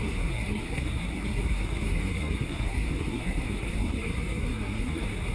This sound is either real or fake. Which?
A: fake